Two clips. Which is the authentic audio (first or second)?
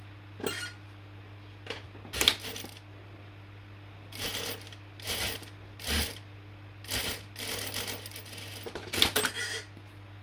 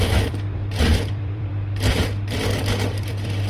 first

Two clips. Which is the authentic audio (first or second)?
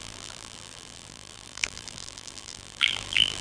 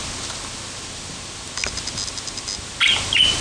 second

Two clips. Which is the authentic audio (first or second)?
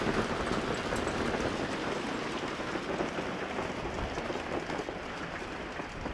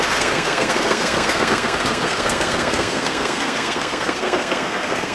first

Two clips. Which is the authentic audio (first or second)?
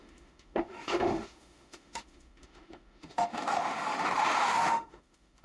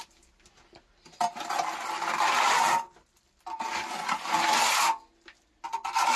second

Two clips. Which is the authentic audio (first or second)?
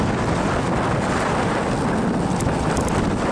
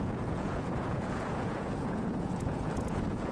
first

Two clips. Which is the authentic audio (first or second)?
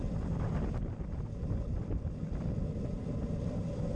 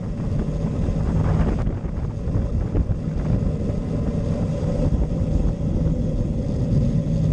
second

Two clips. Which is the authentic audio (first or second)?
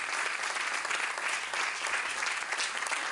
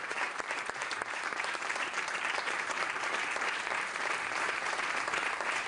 first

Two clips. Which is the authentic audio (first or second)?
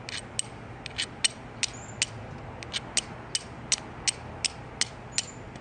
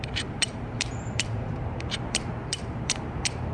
first